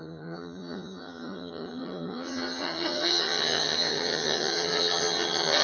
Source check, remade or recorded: remade